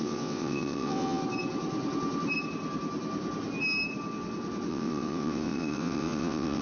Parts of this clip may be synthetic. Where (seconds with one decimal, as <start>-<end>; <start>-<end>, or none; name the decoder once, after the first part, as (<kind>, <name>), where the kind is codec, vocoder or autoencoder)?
0.0-1.2 (vocoder, WaveNeXt); 4.7-6.6